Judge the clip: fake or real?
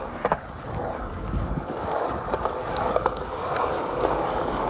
fake